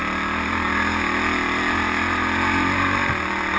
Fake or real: real